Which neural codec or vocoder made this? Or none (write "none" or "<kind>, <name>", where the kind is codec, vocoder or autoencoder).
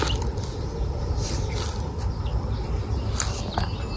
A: none